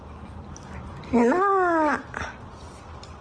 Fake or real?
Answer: real